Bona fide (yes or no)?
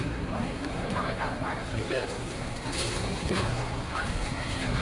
no